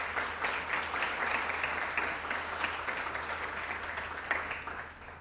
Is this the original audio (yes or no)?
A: yes